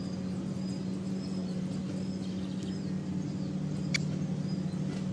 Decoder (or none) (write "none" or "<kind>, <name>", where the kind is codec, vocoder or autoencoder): none